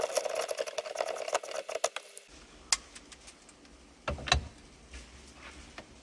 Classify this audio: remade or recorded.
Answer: recorded